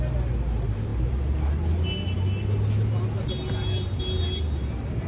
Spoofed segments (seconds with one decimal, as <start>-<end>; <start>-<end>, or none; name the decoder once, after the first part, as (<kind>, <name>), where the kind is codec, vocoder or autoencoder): none